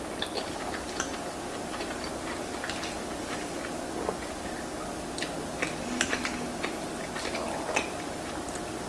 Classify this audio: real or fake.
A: real